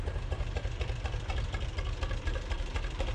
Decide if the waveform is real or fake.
fake